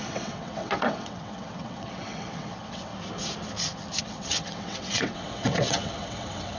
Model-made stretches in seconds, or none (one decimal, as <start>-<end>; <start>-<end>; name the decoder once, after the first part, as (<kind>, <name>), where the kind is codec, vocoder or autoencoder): 0.0-2.9 (vocoder, WaveNeXt); 4.0-6.6